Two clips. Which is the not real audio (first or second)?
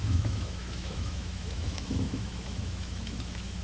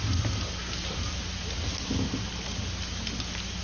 first